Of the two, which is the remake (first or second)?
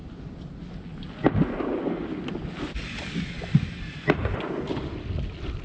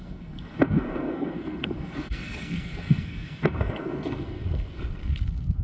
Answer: second